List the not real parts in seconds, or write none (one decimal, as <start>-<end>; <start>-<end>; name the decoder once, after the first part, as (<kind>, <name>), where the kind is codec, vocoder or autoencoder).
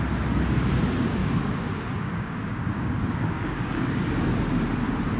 1.2-4.1 (codec, DAC)